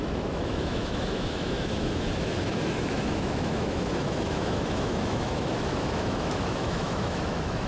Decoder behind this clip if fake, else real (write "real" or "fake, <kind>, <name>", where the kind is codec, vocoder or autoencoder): fake, autoencoder, DAC-VAE